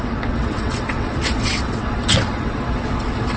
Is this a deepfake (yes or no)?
yes